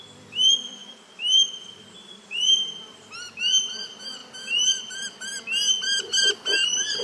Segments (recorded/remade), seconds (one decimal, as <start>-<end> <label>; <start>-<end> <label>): 0.0-5.3 remade; 5.3-6.0 recorded; 6.0-7.0 remade